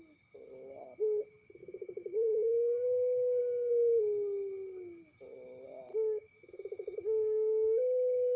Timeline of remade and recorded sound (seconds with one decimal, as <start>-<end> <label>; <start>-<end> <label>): 0.0-1.6 recorded; 1.6-3.4 remade; 3.4-5.9 recorded; 5.9-8.4 remade